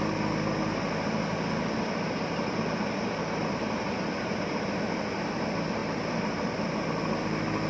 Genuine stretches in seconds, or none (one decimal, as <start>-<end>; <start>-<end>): 0.0-7.7